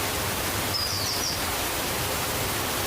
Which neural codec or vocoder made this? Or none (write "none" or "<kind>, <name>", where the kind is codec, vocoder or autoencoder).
none